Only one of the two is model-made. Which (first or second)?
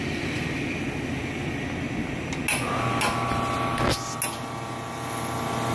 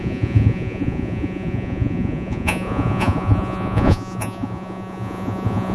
second